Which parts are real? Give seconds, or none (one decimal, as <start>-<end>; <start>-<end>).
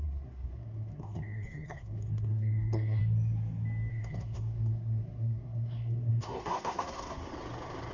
3.0-3.9; 7.2-7.9